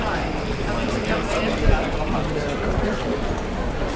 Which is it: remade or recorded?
recorded